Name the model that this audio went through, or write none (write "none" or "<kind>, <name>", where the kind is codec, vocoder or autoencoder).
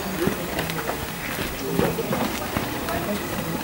none